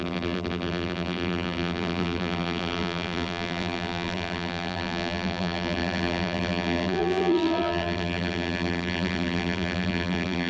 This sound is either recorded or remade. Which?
remade